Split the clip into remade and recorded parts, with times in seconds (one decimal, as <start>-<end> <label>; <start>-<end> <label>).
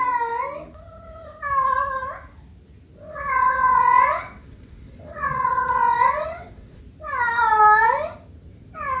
0.0-3.1 recorded; 3.1-6.8 remade; 6.8-9.0 recorded